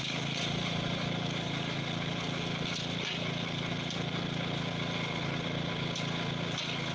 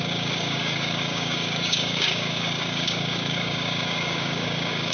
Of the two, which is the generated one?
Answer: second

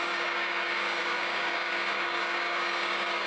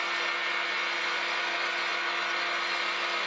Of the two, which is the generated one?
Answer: first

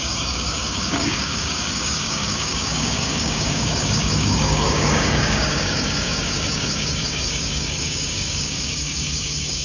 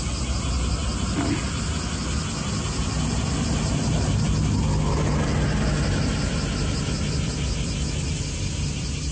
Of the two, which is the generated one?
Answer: first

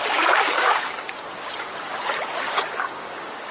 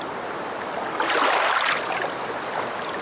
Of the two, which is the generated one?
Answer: first